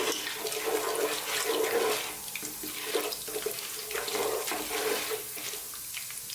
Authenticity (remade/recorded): recorded